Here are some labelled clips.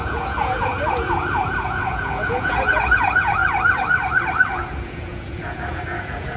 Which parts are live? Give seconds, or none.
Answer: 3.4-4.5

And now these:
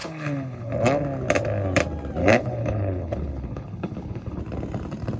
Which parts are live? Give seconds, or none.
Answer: 0.7-2.2; 4.4-5.2